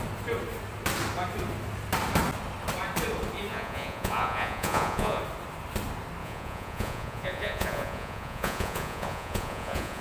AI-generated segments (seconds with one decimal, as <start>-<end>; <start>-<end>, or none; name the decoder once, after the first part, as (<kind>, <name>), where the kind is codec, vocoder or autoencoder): 3.5-5.2 (vocoder, Vocos); 6.2-10.0